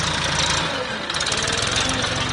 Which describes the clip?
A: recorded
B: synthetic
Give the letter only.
A